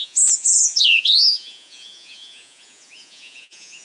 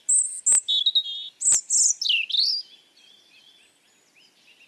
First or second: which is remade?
first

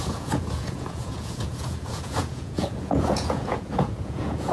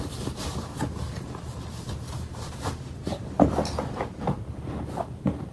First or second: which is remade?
first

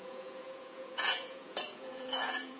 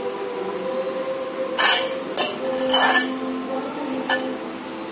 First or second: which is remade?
first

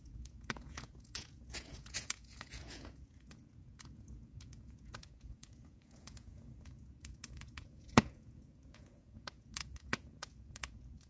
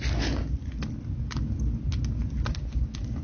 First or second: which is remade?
first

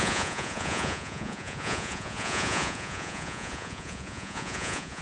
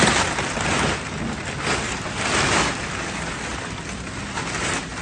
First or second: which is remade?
first